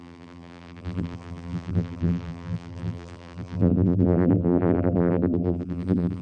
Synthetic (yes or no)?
yes